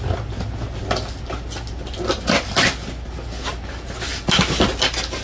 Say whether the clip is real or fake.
real